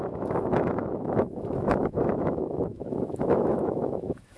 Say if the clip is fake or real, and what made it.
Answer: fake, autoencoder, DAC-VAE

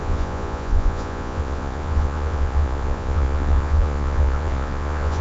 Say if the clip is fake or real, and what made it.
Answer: fake, vocoder, Vocos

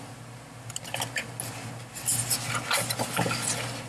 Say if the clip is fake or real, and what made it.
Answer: real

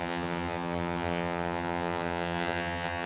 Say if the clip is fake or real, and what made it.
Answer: fake, vocoder, HiFi-GAN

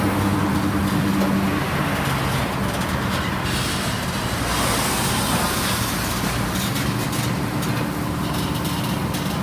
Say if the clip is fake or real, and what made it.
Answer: real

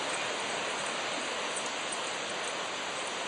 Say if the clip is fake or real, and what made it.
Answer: real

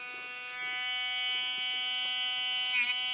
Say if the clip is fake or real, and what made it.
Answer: real